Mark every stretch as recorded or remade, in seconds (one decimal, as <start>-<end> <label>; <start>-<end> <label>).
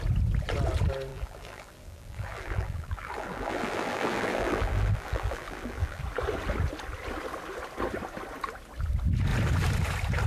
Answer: 0.0-1.1 recorded; 1.1-6.0 remade; 6.0-10.3 recorded